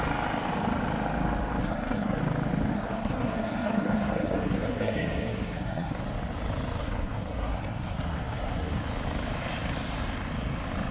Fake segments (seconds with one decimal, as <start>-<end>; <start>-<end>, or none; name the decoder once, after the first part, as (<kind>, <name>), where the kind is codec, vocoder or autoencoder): 1.6-2.2 (codec, SNAC); 2.7-6.0; 6.8-8.8

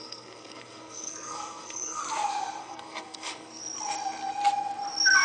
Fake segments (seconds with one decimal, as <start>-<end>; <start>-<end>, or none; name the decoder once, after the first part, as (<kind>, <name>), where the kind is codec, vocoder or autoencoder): 0.0-2.0 (codec, SNAC); 2.6-3.6

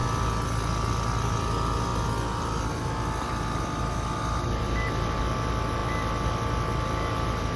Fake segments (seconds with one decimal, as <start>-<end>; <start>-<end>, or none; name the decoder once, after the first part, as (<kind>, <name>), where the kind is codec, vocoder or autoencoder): none

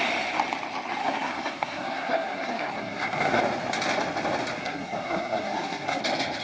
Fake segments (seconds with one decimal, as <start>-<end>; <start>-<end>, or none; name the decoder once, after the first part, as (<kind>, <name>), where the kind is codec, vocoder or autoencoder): 1.0-3.4 (codec, SNAC); 4.6-6.0

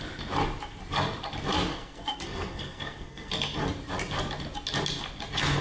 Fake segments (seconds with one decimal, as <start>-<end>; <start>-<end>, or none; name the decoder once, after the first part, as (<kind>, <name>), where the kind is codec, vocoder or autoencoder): 1.7-3.3 (codec, SNAC)

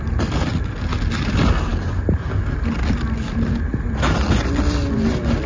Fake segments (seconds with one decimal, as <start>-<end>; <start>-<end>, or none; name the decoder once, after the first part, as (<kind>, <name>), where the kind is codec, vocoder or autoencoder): none